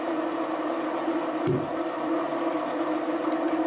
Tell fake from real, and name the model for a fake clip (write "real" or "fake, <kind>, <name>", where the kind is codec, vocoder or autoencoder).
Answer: real